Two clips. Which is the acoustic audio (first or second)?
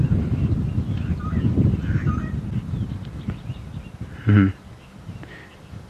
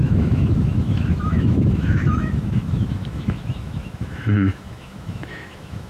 first